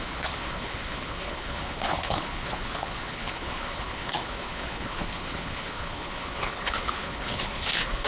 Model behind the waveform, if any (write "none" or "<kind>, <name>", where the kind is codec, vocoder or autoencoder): codec, HILCodec